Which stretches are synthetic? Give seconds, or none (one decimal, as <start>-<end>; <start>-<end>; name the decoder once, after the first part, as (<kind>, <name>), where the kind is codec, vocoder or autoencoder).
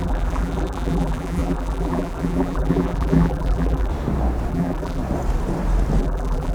0.0-3.9 (vocoder, BigVGAN v2); 4.5-5.0; 6.0-6.5